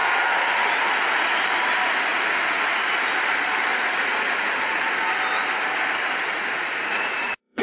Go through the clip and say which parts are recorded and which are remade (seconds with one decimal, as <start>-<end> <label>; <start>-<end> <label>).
0.0-3.7 recorded; 3.7-4.7 remade; 4.7-6.9 recorded; 6.9-7.6 remade